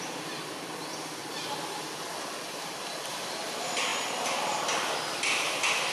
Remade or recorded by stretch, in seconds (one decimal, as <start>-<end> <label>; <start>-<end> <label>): 0.0-5.9 recorded